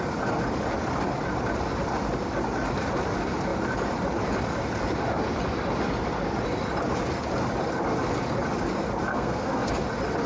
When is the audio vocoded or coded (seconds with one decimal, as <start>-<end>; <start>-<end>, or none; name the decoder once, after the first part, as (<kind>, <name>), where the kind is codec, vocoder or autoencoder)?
9.1-9.7 (codec, SNAC)